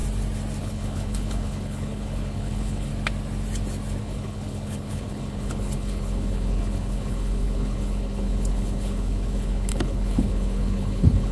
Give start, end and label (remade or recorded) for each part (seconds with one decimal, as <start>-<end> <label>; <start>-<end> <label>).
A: 0.0-0.6 recorded; 0.6-2.9 remade; 2.9-4.0 recorded; 4.0-11.3 remade

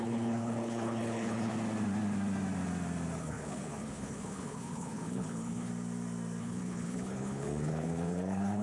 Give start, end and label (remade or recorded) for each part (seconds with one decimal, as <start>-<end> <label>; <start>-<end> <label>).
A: 0.0-1.5 remade; 1.5-3.2 recorded; 3.2-5.7 remade; 5.7-6.4 recorded; 6.4-8.6 remade